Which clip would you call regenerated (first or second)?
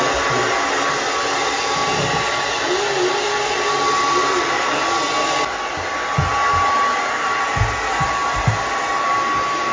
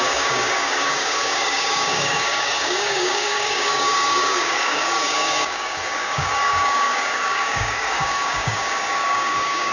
second